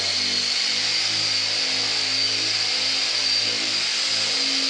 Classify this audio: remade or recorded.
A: recorded